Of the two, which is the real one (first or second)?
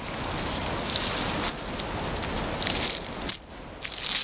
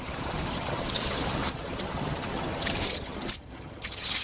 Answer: first